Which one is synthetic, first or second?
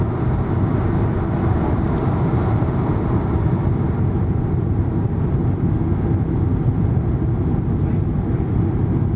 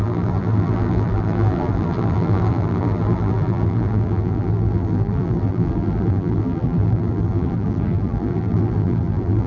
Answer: second